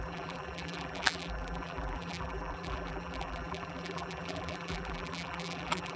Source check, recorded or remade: remade